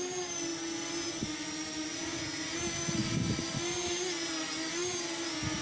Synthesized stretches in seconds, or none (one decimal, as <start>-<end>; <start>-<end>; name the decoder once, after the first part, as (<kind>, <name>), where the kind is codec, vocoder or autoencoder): none